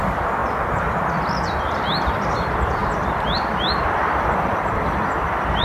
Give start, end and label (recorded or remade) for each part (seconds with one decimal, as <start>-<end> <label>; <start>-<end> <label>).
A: 0.0-0.4 remade; 0.4-1.7 recorded; 1.7-5.6 remade